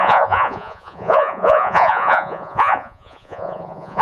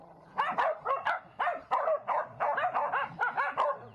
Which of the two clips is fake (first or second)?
first